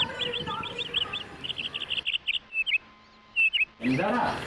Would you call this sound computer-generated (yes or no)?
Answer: no